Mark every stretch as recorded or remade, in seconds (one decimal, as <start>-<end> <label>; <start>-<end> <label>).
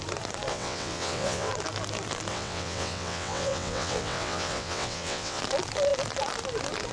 0.0-0.5 recorded; 0.5-1.5 remade; 1.5-2.3 recorded; 2.3-5.4 remade; 5.4-6.9 recorded